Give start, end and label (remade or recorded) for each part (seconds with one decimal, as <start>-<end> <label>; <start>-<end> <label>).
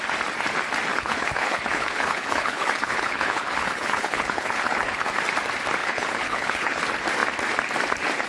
0.0-0.9 recorded; 0.9-5.1 remade; 5.1-5.8 recorded; 5.8-6.8 remade; 6.8-8.3 recorded